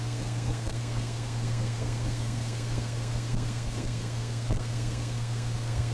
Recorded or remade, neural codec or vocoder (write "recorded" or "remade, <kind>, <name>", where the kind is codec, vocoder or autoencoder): remade, codec, SNAC